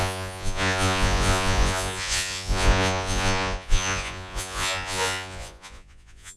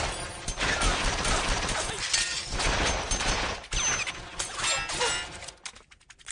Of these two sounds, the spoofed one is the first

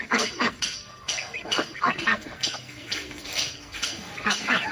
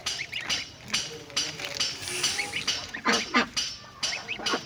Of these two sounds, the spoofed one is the first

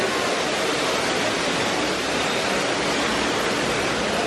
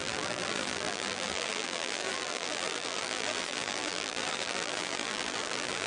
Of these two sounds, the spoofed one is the second